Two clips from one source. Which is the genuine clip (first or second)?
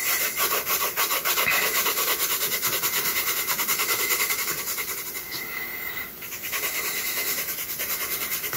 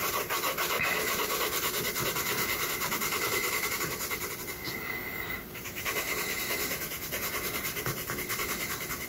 second